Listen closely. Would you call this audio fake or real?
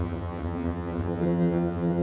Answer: fake